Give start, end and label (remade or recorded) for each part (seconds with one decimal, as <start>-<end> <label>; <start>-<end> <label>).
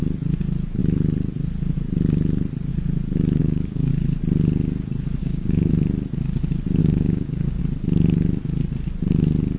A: 0.0-3.4 recorded; 3.4-3.9 remade; 3.9-5.2 recorded; 5.2-5.7 remade; 5.7-6.8 recorded; 6.8-7.6 remade; 7.6-9.6 recorded